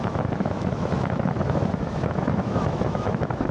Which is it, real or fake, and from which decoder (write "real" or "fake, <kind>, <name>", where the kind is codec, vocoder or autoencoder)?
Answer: fake, autoencoder, DAC-VAE